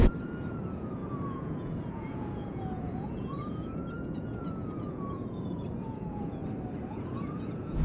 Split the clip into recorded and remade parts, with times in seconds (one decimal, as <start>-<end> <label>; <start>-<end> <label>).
0.0-6.4 remade; 6.4-6.9 recorded; 6.9-7.8 remade